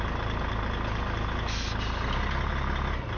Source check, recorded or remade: recorded